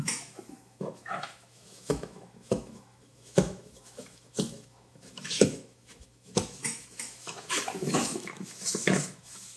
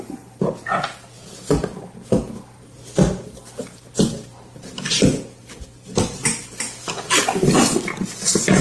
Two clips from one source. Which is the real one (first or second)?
second